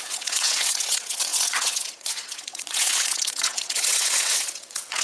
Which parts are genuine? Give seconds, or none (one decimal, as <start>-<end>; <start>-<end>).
none